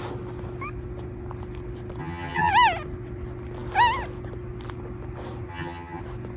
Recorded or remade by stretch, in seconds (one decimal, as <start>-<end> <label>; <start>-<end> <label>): 0.0-2.0 recorded; 2.0-2.5 remade; 2.5-5.5 recorded; 5.5-6.0 remade; 6.0-6.4 recorded